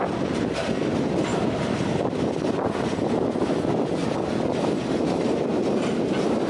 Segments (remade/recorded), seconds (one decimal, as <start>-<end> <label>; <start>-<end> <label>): 0.0-6.5 recorded